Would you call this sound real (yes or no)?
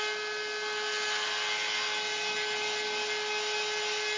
yes